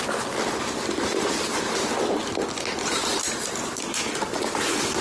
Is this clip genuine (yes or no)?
yes